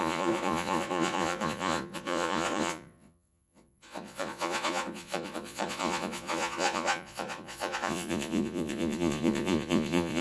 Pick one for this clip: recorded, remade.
remade